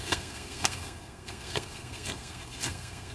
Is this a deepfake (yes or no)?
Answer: yes